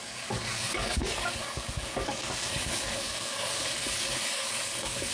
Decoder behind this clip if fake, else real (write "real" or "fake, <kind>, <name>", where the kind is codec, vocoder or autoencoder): fake, codec, DAC